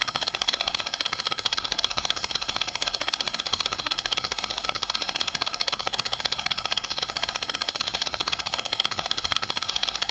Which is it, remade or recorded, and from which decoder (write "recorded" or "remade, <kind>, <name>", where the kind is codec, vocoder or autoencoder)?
remade, codec, SNAC